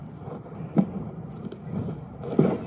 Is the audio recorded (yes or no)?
yes